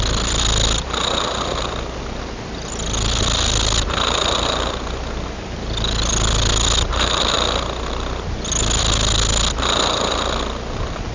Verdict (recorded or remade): recorded